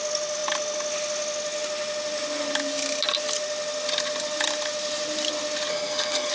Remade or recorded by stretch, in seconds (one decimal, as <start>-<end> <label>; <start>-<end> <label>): 0.0-5.7 recorded; 5.7-6.3 remade